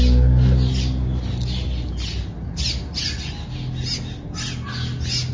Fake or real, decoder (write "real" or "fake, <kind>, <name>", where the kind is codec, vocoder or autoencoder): real